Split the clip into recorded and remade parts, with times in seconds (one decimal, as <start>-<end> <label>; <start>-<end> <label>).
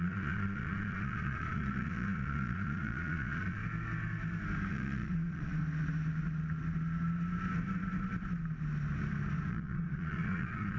0.0-3.6 remade; 3.6-4.7 recorded; 4.7-5.6 remade; 5.6-9.5 recorded; 9.5-10.8 remade